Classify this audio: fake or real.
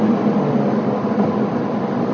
real